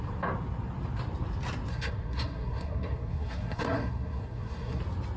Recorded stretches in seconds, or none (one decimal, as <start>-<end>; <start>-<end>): 0.0-1.7; 4.8-5.2